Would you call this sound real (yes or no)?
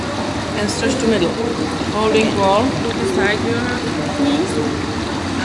yes